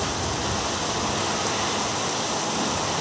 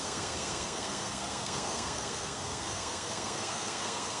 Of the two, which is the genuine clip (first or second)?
first